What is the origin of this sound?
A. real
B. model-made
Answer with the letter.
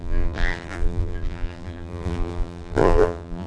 B